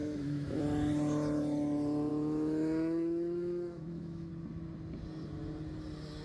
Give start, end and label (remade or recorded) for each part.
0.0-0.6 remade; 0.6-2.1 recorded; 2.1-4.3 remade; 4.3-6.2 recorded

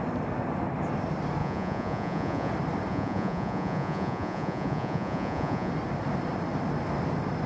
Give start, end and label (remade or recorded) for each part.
0.0-1.4 recorded; 1.4-2.5 remade; 2.5-2.9 recorded; 2.9-5.7 remade; 5.7-7.5 recorded

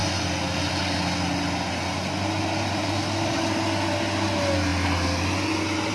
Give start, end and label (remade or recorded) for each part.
0.0-5.9 recorded